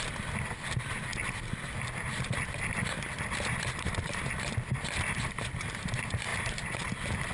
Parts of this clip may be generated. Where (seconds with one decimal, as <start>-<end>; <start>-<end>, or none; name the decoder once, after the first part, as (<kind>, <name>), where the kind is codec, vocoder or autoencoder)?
none